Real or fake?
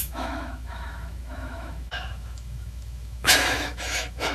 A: fake